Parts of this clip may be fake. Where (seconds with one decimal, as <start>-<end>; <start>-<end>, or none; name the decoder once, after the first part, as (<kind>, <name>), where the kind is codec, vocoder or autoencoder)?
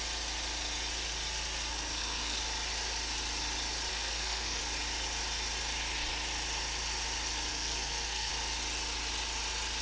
1.7-2.4 (codec, SNAC); 3.9-4.6; 7.5-8.3